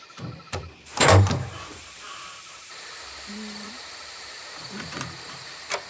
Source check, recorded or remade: remade